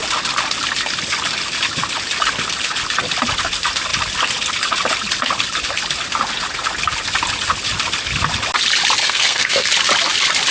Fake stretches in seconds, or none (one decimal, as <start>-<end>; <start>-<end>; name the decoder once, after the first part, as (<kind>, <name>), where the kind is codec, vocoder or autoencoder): 9.0-9.7 (codec, SNAC)